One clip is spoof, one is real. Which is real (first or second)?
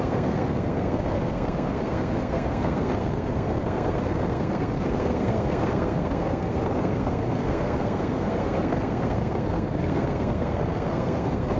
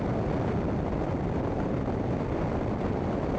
second